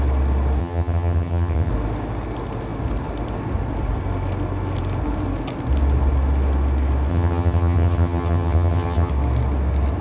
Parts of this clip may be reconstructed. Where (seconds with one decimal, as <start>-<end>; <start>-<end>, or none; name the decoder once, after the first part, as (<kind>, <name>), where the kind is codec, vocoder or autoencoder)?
0.6-1.7 (vocoder, HiFi-GAN); 7.1-9.1